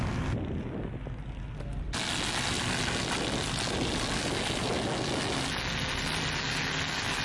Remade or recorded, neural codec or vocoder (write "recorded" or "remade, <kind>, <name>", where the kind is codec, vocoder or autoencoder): recorded